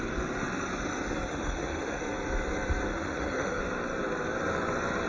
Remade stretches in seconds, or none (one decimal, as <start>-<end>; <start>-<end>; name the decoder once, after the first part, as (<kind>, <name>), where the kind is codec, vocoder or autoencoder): 1.3-2.0 (autoencoder, DAC-VAE); 2.9-3.6